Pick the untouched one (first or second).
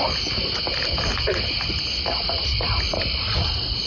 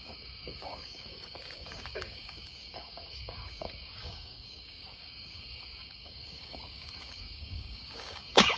first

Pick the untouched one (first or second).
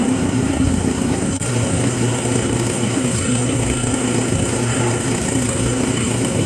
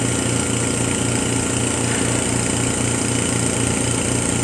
second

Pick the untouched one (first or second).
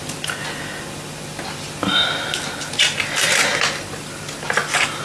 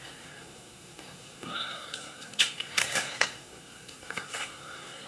first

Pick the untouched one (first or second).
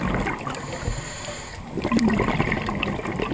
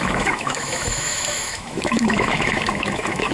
first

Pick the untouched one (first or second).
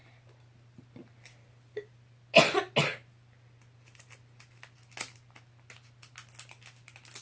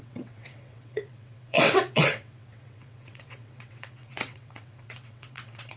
first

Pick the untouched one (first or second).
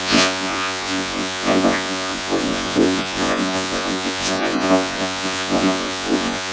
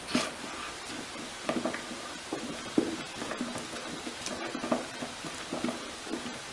second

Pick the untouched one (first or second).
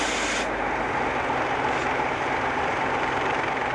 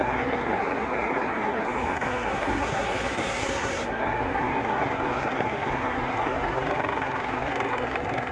first